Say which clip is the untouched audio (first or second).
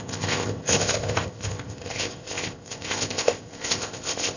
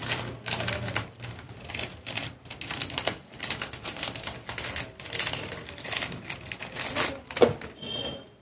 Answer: second